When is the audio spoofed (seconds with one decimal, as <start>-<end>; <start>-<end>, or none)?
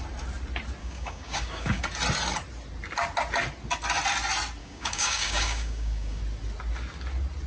0.8-1.8; 4.6-6.2